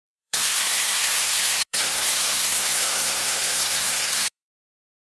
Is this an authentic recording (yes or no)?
no